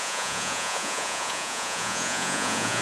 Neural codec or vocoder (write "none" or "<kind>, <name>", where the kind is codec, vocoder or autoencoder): vocoder, Vocos